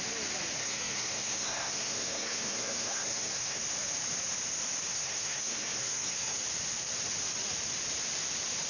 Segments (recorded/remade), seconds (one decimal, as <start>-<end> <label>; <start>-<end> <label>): 0.0-0.6 recorded; 0.6-3.6 remade; 3.6-4.9 recorded; 4.9-6.4 remade; 6.4-8.7 recorded